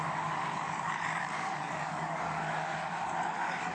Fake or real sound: fake